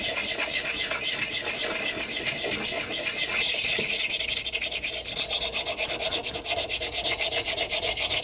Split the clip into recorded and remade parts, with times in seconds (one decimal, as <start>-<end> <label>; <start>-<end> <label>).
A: 0.0-8.2 recorded